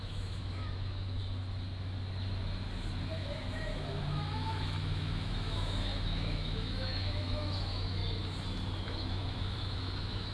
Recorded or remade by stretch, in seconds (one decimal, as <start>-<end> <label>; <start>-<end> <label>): 0.0-1.2 remade; 1.2-3.0 recorded; 3.0-8.0 remade; 8.0-8.8 recorded; 8.8-10.3 remade